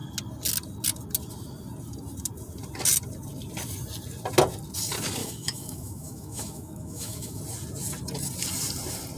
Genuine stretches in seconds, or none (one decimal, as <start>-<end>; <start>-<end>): 0.0-5.2; 7.4-9.2